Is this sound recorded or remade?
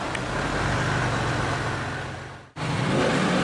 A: recorded